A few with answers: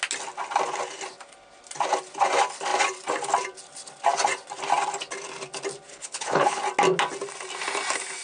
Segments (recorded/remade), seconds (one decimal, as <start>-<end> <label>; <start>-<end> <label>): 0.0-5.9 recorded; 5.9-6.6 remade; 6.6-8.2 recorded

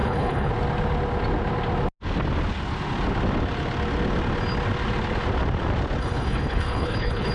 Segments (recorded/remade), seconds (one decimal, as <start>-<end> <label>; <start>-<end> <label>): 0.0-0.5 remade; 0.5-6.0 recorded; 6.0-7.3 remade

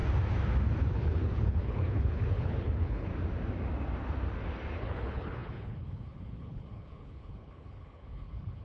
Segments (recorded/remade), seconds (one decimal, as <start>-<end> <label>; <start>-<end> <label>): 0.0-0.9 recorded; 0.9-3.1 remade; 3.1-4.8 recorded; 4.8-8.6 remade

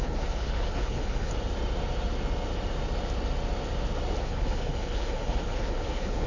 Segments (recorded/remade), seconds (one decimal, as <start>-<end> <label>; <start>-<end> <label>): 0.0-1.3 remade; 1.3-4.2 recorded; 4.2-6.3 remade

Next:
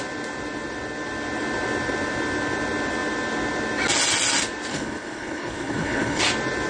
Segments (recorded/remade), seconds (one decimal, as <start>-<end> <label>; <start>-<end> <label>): 0.0-4.7 recorded; 4.7-6.2 remade; 6.2-6.7 recorded

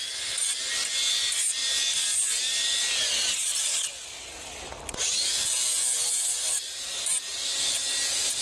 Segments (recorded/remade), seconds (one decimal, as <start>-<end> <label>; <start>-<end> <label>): 0.0-8.4 recorded